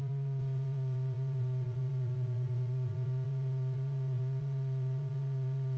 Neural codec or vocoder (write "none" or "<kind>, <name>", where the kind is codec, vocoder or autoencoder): vocoder, Vocos